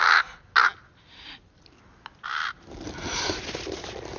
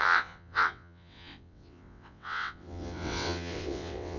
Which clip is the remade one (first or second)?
second